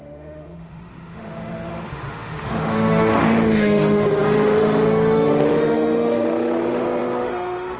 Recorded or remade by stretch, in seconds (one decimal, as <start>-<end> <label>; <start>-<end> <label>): 0.0-7.8 remade